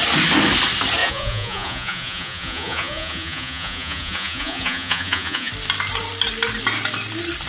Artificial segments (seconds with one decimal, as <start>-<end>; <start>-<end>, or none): 1.0-5.5